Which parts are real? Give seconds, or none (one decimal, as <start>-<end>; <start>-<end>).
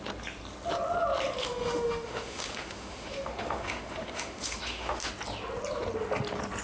0.0-1.4; 5.1-6.6